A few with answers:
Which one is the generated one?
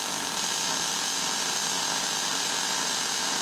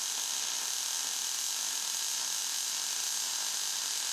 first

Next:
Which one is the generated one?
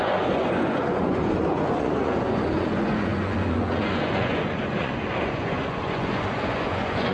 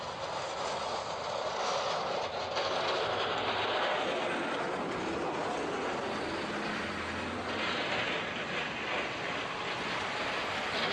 first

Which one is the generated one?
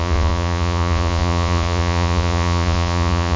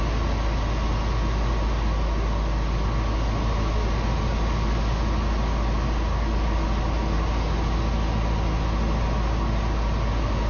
first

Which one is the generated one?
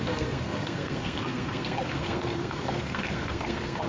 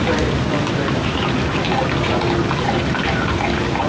first